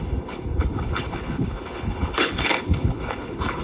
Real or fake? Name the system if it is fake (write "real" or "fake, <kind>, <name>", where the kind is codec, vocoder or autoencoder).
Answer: fake, codec, HILCodec